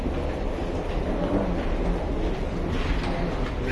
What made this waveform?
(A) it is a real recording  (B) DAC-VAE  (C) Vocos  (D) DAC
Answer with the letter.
A